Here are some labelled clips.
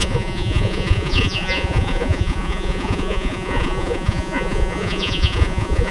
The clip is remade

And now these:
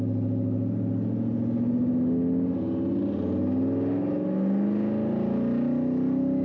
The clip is recorded